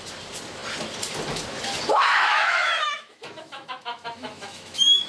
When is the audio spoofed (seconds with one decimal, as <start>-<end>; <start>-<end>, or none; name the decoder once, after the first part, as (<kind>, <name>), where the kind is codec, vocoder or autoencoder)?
1.9-5.1 (autoencoder, DAC-VAE)